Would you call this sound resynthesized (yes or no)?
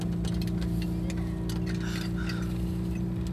no